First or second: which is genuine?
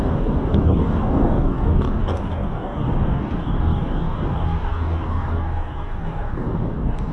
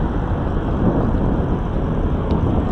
second